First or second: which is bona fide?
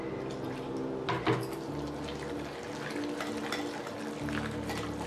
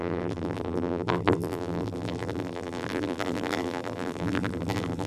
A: first